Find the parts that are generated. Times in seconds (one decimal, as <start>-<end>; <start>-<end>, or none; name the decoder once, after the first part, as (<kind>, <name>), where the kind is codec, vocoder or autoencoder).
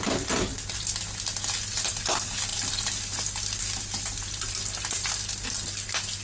none